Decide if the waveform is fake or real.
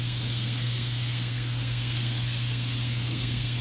fake